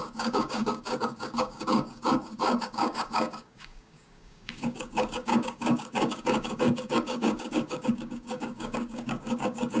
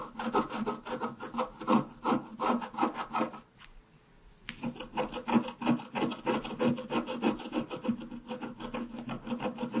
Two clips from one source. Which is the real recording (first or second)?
second